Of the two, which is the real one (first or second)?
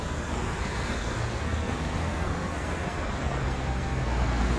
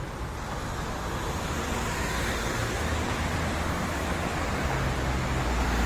second